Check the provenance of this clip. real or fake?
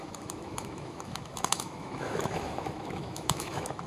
fake